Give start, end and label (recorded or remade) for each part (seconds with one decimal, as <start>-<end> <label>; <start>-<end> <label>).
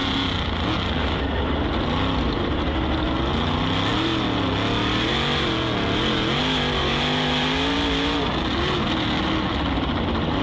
0.0-10.4 recorded